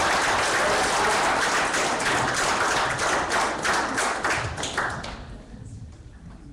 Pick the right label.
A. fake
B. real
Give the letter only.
B